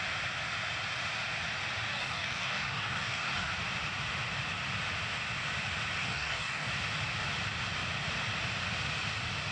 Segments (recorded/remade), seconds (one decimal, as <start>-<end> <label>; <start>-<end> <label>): 0.0-1.9 recorded; 1.9-3.5 remade; 3.5-6.0 recorded; 6.0-6.7 remade; 6.7-9.5 recorded